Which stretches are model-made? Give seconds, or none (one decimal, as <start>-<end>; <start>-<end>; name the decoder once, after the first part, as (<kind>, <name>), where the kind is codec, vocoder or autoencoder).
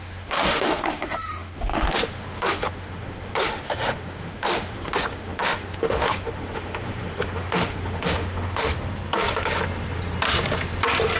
0.0-8.7 (autoencoder, DAC-VAE)